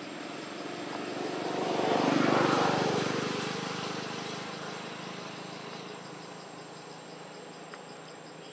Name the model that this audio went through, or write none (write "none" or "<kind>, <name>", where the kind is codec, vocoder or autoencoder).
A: none